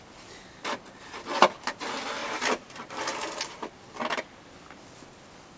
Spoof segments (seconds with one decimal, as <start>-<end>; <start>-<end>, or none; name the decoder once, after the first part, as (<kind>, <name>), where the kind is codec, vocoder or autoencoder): 2.2-4.9 (vocoder, BigVGAN v2)

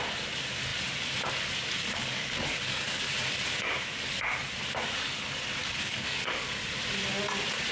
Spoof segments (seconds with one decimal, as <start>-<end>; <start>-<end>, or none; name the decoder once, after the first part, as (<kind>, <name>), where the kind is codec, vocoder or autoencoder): 1.8-3.0 (codec, DAC); 5.6-6.5

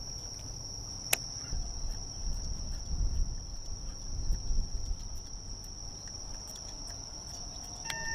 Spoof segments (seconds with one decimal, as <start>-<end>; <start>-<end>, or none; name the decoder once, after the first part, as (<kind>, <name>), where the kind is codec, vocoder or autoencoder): none

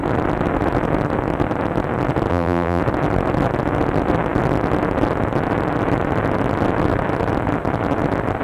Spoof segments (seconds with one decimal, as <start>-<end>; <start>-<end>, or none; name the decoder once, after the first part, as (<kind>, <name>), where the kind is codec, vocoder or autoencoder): 2.3-2.8 (vocoder, BigVGAN v2)

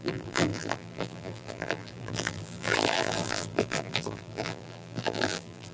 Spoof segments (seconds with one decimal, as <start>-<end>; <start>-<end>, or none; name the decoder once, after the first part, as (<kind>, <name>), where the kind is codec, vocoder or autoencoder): 0.0-5.7 (vocoder, BigVGAN v2)

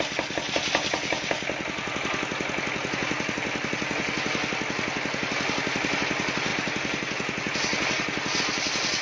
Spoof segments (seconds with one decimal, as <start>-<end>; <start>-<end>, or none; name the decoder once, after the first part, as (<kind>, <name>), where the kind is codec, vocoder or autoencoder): none

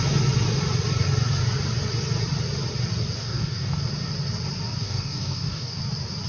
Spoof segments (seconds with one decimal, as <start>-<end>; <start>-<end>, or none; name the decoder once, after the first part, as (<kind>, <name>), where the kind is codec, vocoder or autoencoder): 3.2-3.8 (codec, DAC); 4.8-5.8

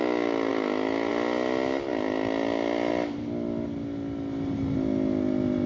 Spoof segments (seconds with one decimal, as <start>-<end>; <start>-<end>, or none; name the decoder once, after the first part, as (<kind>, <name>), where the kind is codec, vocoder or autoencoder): 0.5-1.1 (autoencoder, DAC-VAE)